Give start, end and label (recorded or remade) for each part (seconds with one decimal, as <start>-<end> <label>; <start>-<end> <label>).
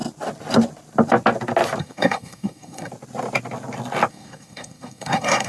0.0-1.8 recorded; 1.8-2.9 remade; 2.9-4.1 recorded; 4.1-5.5 remade